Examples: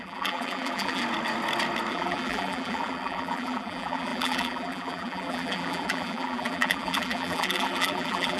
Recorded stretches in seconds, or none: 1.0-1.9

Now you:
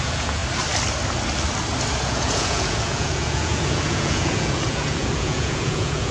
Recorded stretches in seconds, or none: 0.4-2.1

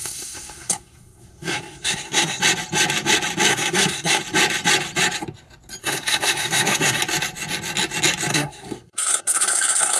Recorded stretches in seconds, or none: 2.4-3.5; 4.2-5.8; 7.0-8.3